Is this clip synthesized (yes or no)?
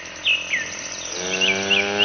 no